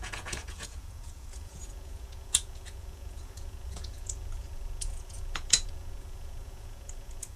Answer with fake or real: fake